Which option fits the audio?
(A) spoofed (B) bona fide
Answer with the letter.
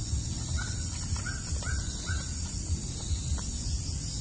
B